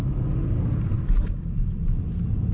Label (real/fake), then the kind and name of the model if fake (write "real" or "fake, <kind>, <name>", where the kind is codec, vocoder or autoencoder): real